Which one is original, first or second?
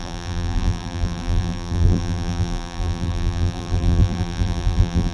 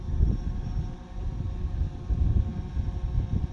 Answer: second